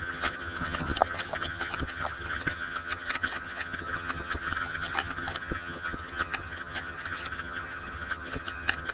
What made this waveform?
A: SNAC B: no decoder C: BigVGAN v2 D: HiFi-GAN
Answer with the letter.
D